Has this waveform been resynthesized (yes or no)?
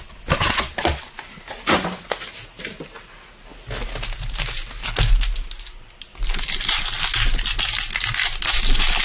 no